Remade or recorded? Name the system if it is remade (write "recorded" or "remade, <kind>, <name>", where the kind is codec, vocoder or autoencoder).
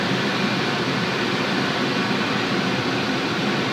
recorded